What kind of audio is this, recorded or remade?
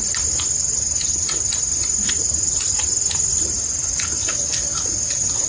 recorded